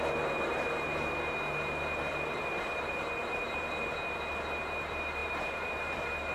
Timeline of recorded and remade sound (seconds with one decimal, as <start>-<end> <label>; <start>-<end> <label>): 0.0-2.1 recorded; 2.1-2.9 remade; 2.9-5.2 recorded; 5.2-6.3 remade